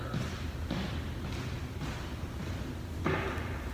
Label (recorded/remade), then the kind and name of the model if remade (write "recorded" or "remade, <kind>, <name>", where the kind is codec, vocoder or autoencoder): recorded